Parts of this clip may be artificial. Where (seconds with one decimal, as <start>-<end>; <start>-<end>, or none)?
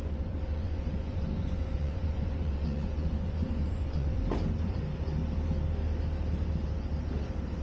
0.0-4.2